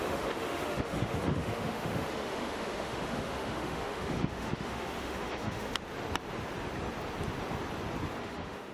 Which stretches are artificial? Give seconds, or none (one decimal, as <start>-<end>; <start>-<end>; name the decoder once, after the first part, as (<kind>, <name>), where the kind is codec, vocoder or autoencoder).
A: 0.0-5.7 (autoencoder, DAC-VAE); 8.2-8.7